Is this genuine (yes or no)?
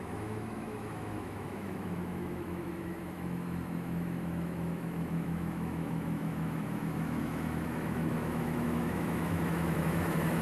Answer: no